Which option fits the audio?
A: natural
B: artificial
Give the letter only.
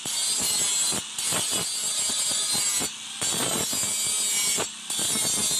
A